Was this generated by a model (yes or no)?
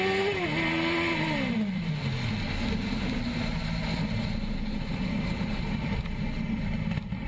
no